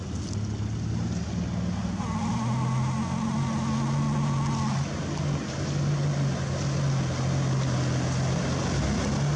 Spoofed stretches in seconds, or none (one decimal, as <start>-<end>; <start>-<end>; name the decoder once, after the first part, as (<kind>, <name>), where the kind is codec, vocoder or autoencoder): none